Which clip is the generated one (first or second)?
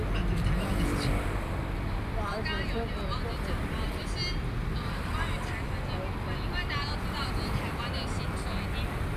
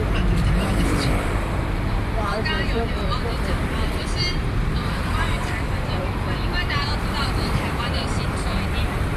second